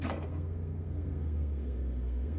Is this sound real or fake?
fake